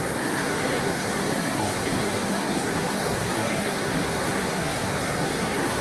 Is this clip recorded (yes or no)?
no